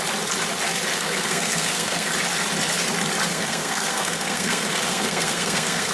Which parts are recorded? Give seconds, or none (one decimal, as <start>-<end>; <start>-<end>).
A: 0.0-0.9; 2.1-3.3